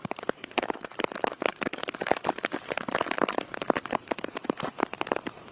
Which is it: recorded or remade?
remade